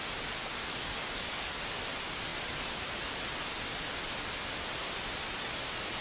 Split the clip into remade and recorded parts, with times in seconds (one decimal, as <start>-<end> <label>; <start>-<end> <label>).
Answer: 0.0-0.4 recorded; 0.4-1.5 remade; 1.5-6.0 recorded